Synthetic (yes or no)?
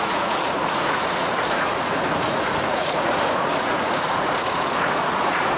yes